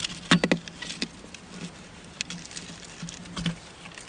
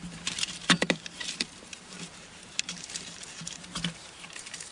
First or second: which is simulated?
second